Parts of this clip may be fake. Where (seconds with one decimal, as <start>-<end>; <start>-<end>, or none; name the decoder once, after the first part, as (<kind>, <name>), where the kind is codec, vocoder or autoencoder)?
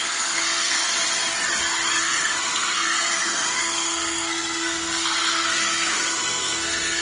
0.0-0.9 (codec, SNAC); 2.0-7.0